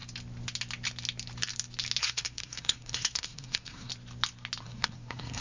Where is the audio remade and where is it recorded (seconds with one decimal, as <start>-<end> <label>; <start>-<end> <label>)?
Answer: 0.0-2.0 recorded; 2.0-3.9 remade; 3.9-4.6 recorded; 4.6-5.4 remade